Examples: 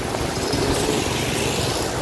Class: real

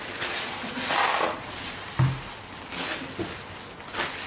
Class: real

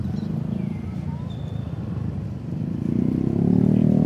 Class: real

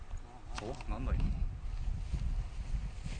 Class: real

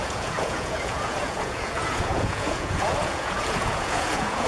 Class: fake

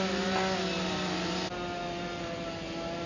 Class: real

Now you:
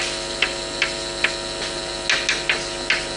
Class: real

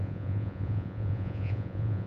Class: fake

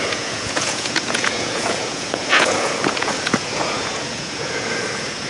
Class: fake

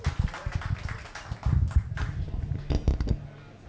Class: real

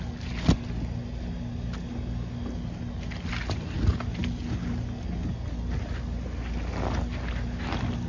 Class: real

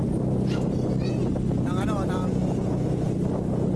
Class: real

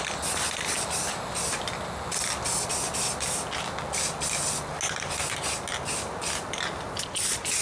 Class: real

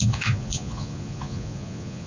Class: fake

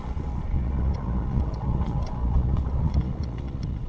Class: fake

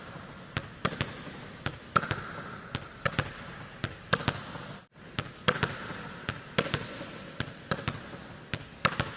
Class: real